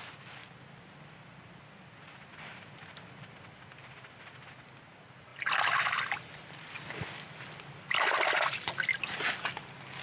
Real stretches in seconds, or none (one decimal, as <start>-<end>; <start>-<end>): 0.0-10.0